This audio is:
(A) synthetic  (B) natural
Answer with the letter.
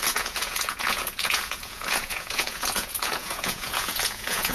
A